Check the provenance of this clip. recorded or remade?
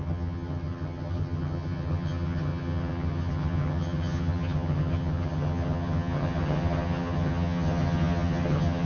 remade